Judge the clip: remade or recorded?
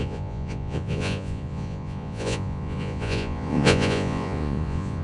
remade